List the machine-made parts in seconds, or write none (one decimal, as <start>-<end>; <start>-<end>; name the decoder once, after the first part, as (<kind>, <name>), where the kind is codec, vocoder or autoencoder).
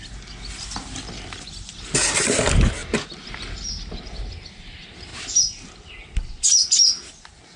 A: 2.8-4.3 (vocoder, BigVGAN v2); 5.1-5.9